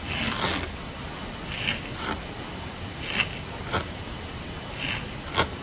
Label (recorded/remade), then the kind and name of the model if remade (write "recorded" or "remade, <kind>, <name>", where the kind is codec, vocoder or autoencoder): recorded